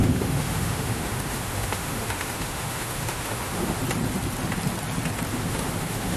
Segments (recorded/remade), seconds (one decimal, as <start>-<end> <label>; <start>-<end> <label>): 0.0-3.8 remade; 3.8-5.3 recorded; 5.3-6.2 remade